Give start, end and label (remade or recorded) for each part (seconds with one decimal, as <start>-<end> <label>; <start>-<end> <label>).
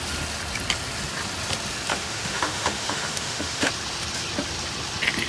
0.0-1.9 recorded; 1.9-3.7 remade; 3.7-5.3 recorded